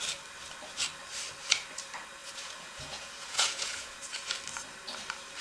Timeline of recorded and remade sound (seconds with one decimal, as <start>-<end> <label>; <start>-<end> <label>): 0.0-2.2 recorded; 2.2-4.0 remade; 4.0-5.4 recorded